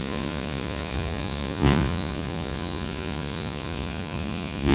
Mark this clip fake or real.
fake